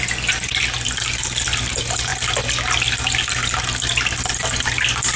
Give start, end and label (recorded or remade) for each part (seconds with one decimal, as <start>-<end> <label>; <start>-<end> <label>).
0.0-5.2 recorded